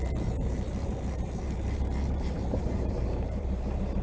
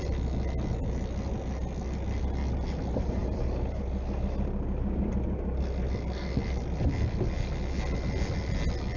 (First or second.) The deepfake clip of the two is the first